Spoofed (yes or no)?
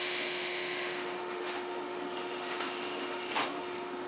yes